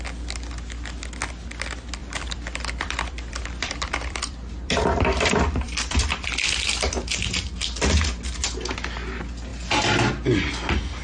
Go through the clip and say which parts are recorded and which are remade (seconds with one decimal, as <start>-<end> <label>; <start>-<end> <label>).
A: 0.0-2.0 recorded; 2.0-6.4 remade; 6.4-11.0 recorded